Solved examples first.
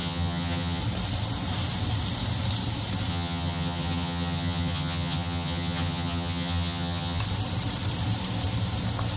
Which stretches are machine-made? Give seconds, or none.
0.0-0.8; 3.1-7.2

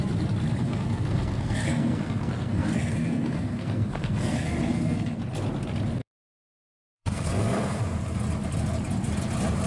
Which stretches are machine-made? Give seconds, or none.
0.6-5.2; 6.0-7.8

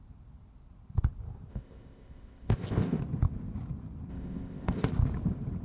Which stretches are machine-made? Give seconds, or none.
1.5-3.0; 4.1-4.9